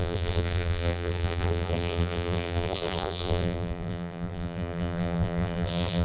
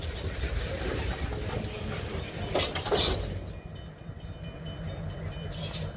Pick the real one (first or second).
second